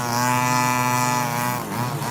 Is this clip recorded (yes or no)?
yes